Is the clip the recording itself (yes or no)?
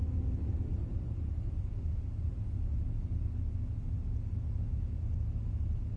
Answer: yes